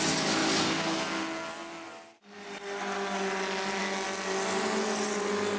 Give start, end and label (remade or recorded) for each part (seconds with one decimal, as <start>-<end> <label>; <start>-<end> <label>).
0.0-5.6 recorded